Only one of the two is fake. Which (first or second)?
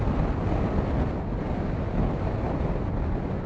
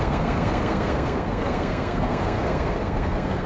second